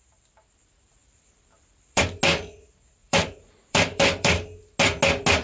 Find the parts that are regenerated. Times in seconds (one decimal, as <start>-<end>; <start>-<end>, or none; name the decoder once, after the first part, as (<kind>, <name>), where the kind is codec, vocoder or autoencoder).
1.0-2.2 (vocoder, BigVGAN v2); 3.0-4.6